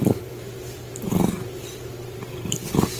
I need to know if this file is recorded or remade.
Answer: recorded